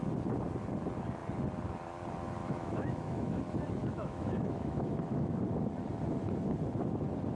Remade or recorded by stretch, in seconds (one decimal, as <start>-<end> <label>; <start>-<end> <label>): 0.0-2.4 recorded; 2.4-3.4 remade; 3.4-3.8 recorded; 3.8-5.4 remade; 5.4-7.4 recorded